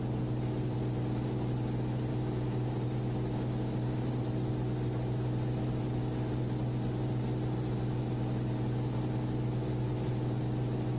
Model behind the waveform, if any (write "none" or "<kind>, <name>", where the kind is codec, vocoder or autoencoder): none